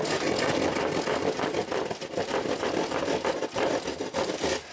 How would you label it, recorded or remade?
recorded